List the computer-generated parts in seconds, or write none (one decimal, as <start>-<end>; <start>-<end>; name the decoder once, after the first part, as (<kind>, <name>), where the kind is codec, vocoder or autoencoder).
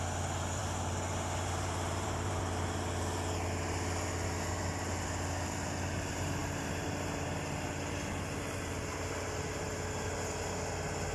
0.6-2.4 (vocoder, BigVGAN v2); 6.4-7.3